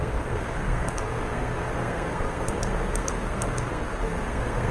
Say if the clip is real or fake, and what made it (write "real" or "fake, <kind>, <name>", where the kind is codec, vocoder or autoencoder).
fake, codec, SNAC